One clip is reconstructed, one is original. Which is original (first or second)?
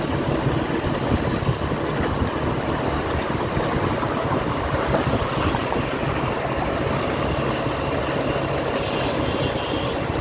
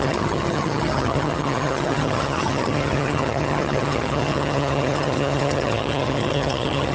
first